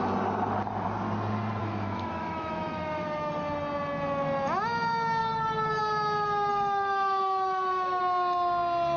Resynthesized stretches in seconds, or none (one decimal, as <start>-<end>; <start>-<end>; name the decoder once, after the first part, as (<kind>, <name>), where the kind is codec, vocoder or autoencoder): 1.6-3.3 (autoencoder, DAC-VAE); 6.5-8.0